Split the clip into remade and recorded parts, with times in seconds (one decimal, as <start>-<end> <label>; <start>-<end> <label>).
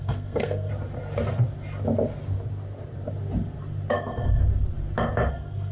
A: 0.0-0.7 remade; 0.7-3.9 recorded; 3.9-4.4 remade; 4.4-5.3 recorded; 5.3-5.7 remade